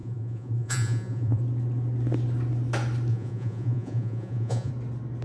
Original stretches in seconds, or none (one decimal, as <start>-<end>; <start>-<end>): 1.4-3.1; 4.7-5.2

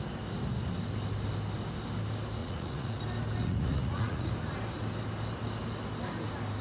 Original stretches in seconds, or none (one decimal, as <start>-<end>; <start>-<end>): 0.0-2.4; 3.0-3.4; 4.3-6.6

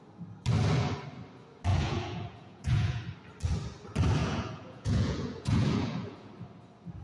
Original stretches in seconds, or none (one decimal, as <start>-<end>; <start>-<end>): 0.0-1.7; 3.0-4.2; 6.3-7.0